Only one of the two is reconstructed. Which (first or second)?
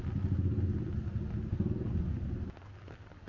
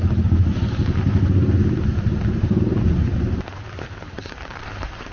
second